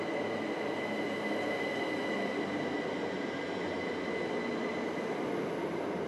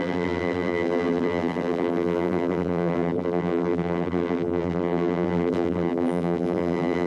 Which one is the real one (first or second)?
first